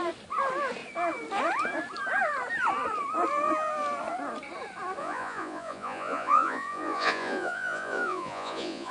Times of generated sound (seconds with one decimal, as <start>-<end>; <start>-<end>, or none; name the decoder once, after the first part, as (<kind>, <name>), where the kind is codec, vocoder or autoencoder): 5.0-8.9 (vocoder, Vocos)